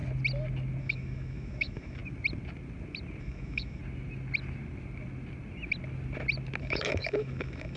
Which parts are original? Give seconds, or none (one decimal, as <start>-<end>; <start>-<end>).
0.0-0.8; 2.0-3.2; 3.8-6.6